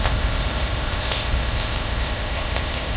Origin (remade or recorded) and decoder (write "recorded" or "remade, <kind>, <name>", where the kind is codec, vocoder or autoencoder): remade, codec, ZipCodec